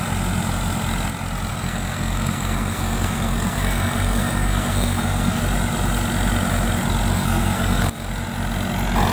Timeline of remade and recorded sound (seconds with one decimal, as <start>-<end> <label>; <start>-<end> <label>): 0.0-1.5 recorded; 1.5-5.4 remade; 5.4-7.1 recorded; 7.1-8.1 remade; 8.1-9.1 recorded